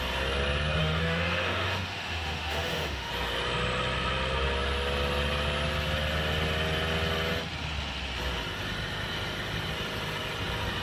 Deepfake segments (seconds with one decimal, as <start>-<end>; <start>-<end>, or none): 0.8-3.1